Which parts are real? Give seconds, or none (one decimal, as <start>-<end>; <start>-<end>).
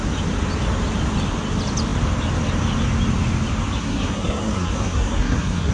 0.0-3.8